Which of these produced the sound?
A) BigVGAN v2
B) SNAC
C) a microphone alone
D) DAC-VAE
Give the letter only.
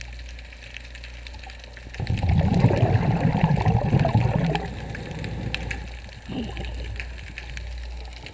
C